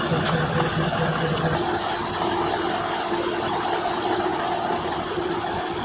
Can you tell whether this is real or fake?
real